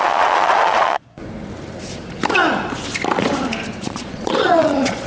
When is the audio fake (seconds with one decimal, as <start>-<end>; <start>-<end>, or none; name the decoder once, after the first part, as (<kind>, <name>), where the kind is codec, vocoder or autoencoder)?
0.0-1.2 (vocoder, Vocos); 3.8-5.1

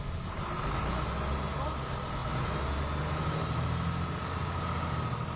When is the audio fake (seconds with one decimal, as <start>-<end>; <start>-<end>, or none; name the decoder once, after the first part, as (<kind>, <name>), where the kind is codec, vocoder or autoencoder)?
none

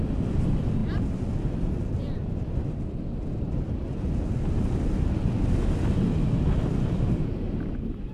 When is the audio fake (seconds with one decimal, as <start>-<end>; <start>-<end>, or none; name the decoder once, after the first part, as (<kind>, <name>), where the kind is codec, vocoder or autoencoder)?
none